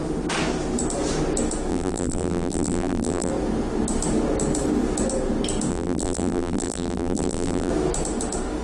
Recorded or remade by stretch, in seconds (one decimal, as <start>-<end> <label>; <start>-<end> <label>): 0.0-1.7 recorded; 1.7-3.3 remade; 3.3-5.7 recorded; 5.7-7.7 remade; 7.7-8.6 recorded